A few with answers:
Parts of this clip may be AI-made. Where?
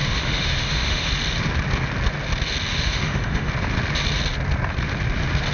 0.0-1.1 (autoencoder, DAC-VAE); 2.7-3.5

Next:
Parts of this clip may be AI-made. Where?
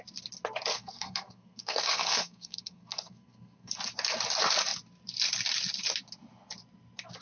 0.7-3.7 (codec, SNAC)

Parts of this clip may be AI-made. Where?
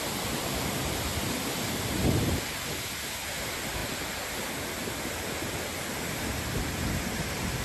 none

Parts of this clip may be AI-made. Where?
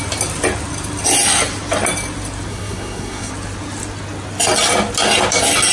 2.5-3.3 (codec, SNAC)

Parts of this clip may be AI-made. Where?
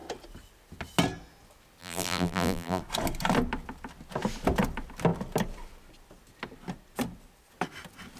1.8-2.8 (vocoder, BigVGAN v2)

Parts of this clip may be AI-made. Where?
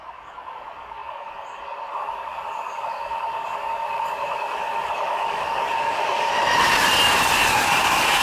0.0-6.3 (codec, DAC); 7.5-8.2